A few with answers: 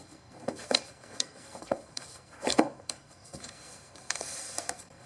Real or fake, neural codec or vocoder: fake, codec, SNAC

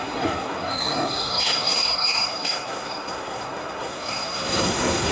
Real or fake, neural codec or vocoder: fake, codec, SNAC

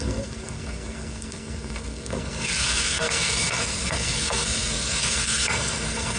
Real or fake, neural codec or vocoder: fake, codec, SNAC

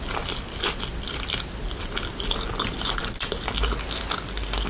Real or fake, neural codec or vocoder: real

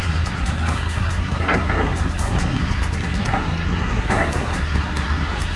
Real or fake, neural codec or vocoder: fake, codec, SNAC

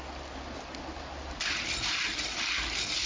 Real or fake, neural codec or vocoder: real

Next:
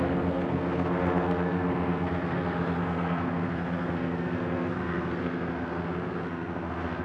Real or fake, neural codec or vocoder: fake, codec, SNAC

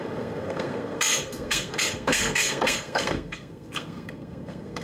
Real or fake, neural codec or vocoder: fake, codec, SNAC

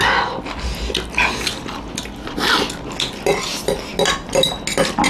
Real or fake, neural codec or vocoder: real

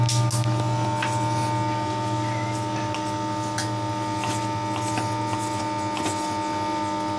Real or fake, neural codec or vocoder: real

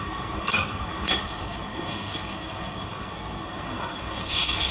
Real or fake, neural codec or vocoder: fake, codec, SNAC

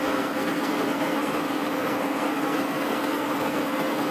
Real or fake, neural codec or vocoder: fake, codec, SNAC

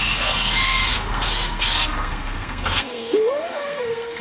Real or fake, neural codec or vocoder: fake, codec, SNAC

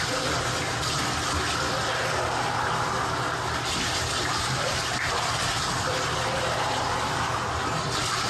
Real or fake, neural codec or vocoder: real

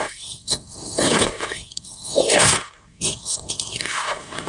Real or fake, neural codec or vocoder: fake, codec, SNAC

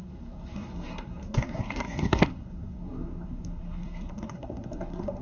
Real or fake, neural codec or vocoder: fake, codec, SNAC